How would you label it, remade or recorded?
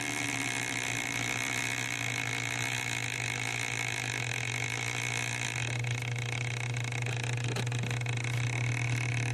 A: recorded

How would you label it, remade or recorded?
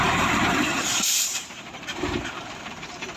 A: remade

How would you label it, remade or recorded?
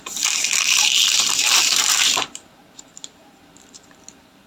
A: remade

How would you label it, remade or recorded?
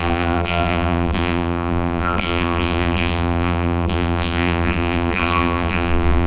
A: remade